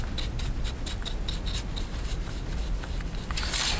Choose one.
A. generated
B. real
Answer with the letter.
B